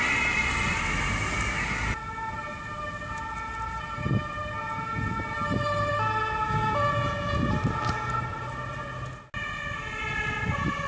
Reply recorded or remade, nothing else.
recorded